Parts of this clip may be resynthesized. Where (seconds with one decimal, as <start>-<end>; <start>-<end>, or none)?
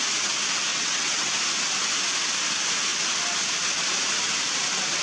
0.7-1.3